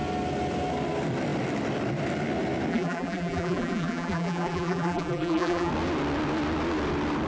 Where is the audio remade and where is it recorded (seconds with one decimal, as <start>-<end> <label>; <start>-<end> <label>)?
0.0-2.7 recorded; 2.7-5.7 remade; 5.7-7.3 recorded